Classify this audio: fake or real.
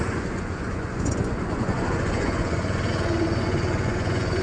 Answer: fake